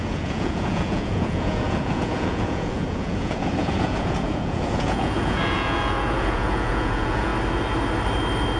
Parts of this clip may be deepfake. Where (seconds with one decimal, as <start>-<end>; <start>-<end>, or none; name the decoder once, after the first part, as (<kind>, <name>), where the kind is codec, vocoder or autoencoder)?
0.0-7.3 (vocoder, Vocos)